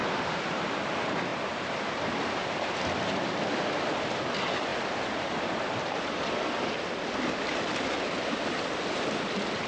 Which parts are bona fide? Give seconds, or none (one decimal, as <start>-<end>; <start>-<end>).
0.7-1.3; 2.8-4.7; 6.2-9.7